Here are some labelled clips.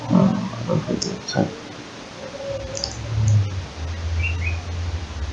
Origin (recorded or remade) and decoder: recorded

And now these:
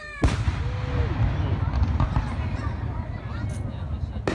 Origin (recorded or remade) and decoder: recorded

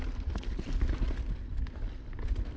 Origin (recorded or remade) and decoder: recorded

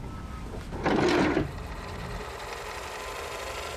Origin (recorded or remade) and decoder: recorded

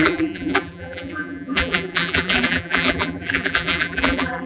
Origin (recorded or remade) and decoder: remade, vocoder, BigVGAN v2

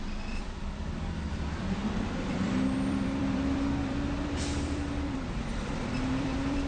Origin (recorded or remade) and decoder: remade, vocoder, BigVGAN v2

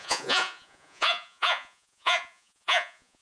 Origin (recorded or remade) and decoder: remade, vocoder, Vocos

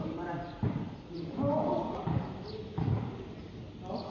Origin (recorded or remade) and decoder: recorded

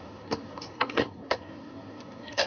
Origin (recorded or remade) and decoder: remade, codec, SNAC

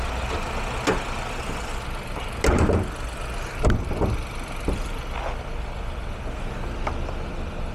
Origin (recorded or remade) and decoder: recorded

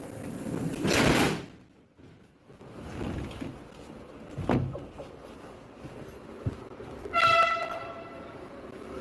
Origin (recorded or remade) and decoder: recorded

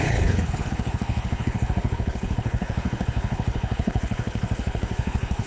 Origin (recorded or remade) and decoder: remade, codec, HILCodec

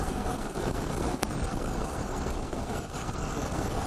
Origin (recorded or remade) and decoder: remade, codec, SNAC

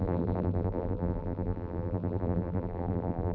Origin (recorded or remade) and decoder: remade, vocoder, BigVGAN v2